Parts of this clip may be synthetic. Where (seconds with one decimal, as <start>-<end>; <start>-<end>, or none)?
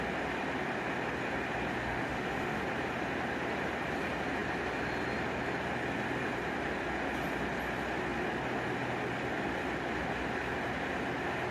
1.8-2.6